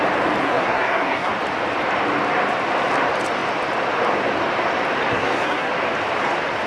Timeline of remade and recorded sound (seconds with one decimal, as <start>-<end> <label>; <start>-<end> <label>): 0.0-0.4 recorded; 0.4-1.3 remade; 1.3-5.1 recorded; 5.1-5.7 remade; 5.7-6.7 recorded